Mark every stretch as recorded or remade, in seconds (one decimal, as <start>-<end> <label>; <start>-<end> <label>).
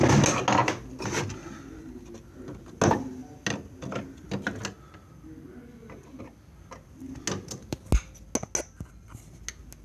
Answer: 0.0-9.8 recorded